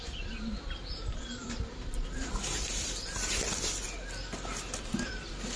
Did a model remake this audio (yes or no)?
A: yes